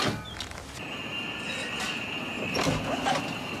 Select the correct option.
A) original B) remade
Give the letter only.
A